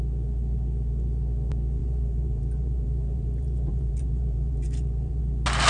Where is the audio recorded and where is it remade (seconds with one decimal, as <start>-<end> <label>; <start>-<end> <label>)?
0.0-1.8 recorded; 1.8-5.2 remade; 5.2-5.7 recorded